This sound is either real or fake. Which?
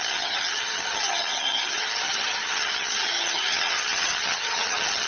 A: fake